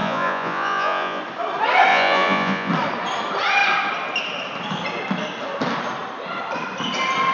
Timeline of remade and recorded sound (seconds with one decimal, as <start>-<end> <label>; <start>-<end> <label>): 0.0-1.2 remade; 1.2-1.9 recorded; 1.9-2.7 remade; 2.7-7.3 recorded